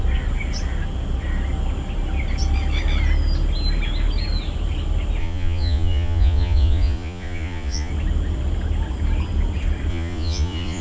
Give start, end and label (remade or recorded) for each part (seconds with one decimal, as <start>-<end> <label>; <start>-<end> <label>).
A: 0.0-5.2 recorded; 5.2-7.9 remade; 7.9-9.9 recorded; 9.9-10.8 remade